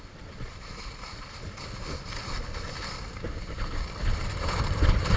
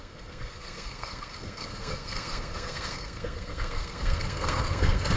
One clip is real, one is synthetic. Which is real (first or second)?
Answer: first